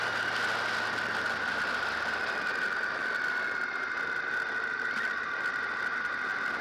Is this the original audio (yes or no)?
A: yes